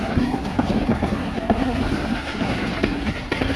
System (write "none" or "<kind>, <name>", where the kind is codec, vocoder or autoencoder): codec, SNAC